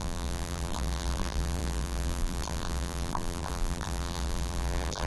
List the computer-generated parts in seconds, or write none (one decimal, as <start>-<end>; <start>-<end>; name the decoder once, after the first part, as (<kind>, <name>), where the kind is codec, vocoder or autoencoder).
0.0-5.1 (vocoder, BigVGAN v2)